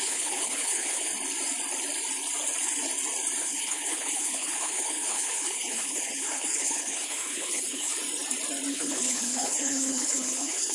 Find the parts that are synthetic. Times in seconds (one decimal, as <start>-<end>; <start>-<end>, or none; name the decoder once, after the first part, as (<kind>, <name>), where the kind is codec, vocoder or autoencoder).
0.0-1.1 (codec, HILCodec); 3.4-7.9; 8.7-10.7